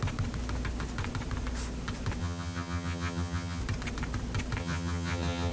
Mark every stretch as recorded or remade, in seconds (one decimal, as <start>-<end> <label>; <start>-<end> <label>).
0.0-2.2 recorded; 2.2-3.6 remade; 3.6-4.6 recorded; 4.6-5.5 remade